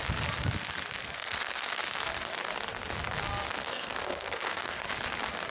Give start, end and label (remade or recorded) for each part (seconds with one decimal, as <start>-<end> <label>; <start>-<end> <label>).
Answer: 0.0-1.0 recorded; 1.0-1.8 remade; 1.8-3.6 recorded; 3.6-4.9 remade; 4.9-5.5 recorded